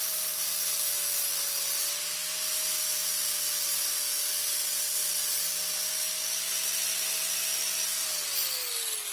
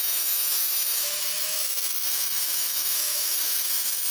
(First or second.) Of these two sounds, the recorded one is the first